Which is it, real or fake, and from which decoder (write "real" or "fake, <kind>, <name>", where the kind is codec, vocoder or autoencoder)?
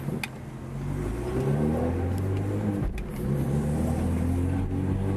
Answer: real